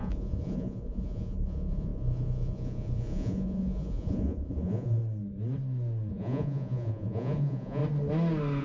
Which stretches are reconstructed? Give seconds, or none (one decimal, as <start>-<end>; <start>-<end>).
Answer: 0.0-5.0; 6.1-7.8